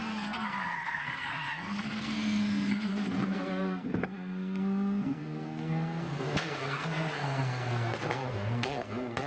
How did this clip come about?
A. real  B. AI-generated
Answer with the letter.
B